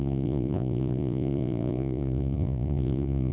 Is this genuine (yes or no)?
no